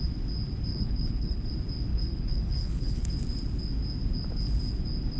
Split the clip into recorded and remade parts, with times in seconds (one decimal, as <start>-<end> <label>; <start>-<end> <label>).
0.0-0.7 recorded; 0.7-1.5 remade; 1.5-1.9 recorded; 1.9-3.1 remade; 3.1-5.2 recorded